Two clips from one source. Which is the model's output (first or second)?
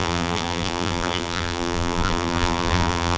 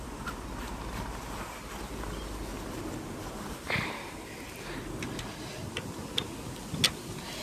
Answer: first